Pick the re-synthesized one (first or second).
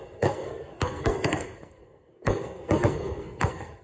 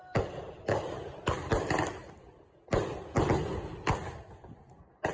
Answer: first